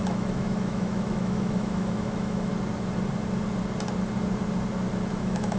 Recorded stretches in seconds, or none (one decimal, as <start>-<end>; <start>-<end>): 2.5-5.1